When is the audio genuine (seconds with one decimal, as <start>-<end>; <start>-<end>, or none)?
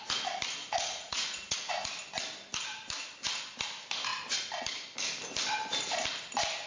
0.0-0.6; 1.7-6.7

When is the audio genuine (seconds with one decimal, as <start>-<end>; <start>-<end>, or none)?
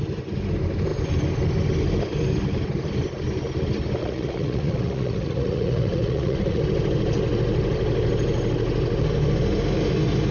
0.0-4.0; 6.6-10.3